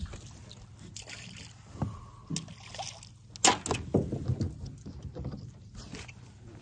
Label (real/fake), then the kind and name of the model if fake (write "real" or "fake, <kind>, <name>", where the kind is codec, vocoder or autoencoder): real